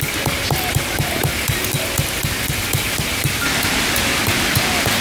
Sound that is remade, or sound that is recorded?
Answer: recorded